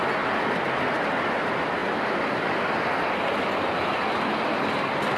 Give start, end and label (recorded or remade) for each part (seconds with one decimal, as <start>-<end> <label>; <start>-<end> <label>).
0.0-5.2 recorded